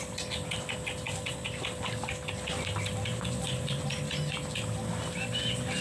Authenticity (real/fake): real